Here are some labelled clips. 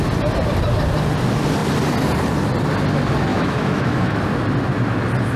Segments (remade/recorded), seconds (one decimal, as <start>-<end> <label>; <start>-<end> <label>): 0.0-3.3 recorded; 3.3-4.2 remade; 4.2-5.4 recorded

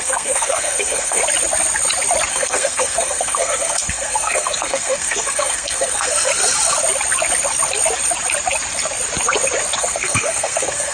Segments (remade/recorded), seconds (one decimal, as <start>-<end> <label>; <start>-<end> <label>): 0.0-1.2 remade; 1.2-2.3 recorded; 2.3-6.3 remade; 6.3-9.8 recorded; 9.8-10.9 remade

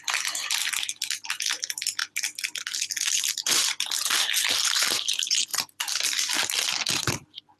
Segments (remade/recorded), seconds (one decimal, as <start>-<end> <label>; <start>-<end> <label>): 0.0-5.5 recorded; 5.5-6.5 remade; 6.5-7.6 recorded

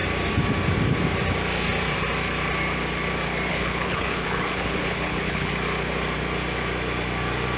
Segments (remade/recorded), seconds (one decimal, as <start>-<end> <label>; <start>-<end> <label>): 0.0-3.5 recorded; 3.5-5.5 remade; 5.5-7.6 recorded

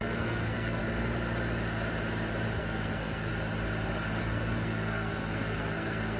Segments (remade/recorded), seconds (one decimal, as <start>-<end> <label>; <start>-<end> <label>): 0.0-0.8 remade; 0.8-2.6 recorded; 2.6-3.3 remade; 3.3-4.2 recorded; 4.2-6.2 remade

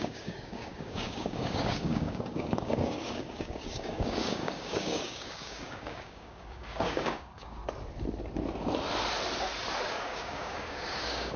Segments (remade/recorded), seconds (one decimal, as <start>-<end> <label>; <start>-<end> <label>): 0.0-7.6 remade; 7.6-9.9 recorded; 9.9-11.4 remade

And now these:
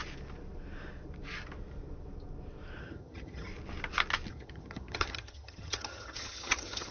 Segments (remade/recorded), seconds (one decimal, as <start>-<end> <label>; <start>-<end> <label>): 0.0-2.8 recorded; 2.8-3.5 remade; 3.5-4.3 recorded; 4.3-6.9 remade